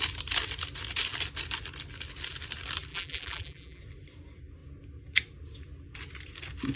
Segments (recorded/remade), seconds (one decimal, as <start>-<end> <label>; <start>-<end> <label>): 0.0-2.9 recorded; 2.9-3.8 remade; 3.8-6.8 recorded